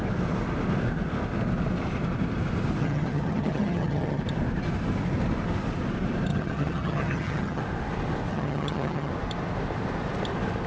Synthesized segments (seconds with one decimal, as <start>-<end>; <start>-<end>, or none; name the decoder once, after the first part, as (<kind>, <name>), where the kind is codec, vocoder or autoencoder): 2.8-4.2 (vocoder, HiFi-GAN); 6.3-7.6; 8.3-9.1